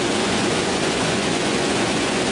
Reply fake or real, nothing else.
fake